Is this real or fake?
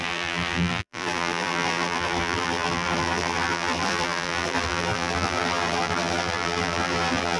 fake